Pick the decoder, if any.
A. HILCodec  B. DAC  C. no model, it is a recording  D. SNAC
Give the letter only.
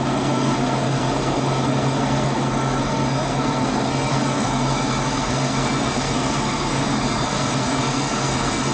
D